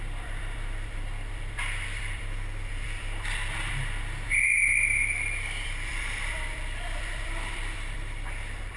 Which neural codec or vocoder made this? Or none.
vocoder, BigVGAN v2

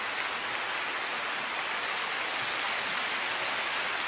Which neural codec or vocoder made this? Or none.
none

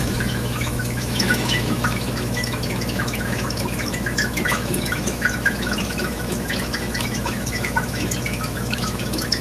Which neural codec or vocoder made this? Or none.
autoencoder, DAC-VAE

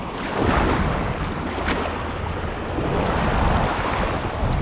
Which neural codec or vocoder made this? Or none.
none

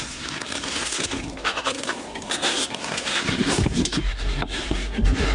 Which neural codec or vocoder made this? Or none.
codec, SNAC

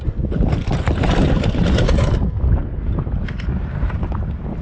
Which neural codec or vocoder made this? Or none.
none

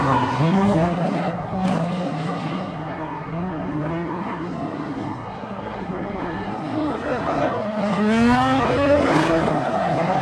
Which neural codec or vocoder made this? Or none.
codec, SNAC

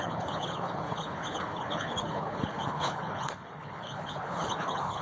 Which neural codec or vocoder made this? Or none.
codec, HILCodec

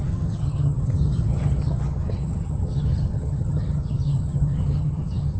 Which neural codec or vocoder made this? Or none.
vocoder, HiFi-GAN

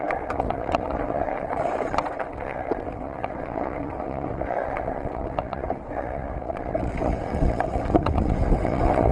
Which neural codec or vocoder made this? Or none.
vocoder, WaveNeXt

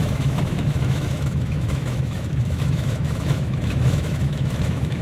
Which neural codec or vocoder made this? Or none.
autoencoder, DAC-VAE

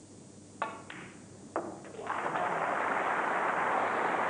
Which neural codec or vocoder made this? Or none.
none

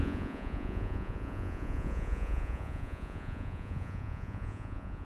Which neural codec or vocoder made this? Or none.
vocoder, Vocos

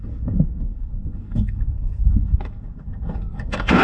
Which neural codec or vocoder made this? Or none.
codec, SNAC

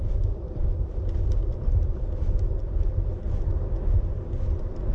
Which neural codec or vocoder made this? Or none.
none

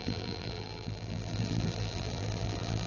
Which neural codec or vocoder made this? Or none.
vocoder, BigVGAN v2